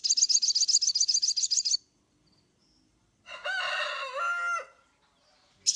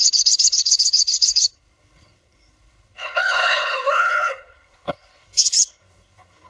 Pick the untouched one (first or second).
first